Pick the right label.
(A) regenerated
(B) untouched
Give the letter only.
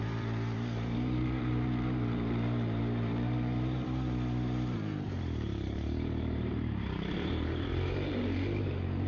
A